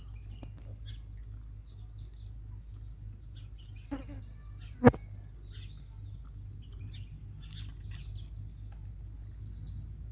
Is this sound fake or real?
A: real